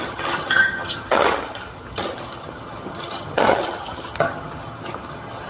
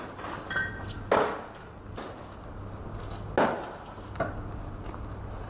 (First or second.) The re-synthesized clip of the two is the first